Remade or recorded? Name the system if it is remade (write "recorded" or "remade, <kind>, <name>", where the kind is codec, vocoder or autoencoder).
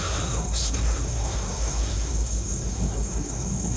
remade, codec, SNAC